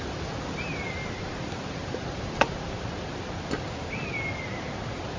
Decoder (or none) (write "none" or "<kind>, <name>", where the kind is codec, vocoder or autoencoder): none